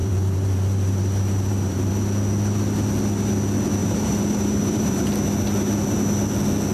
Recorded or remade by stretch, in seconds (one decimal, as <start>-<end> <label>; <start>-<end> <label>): 0.0-1.9 remade; 1.9-3.8 recorded; 3.8-5.0 remade; 5.0-6.7 recorded